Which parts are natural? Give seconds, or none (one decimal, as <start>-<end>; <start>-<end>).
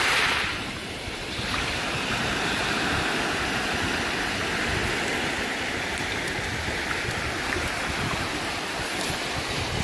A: 2.6-5.0